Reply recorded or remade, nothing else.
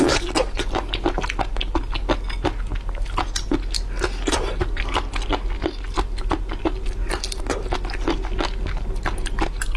recorded